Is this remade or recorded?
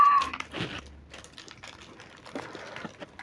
recorded